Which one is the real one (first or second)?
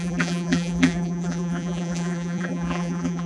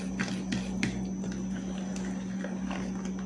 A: second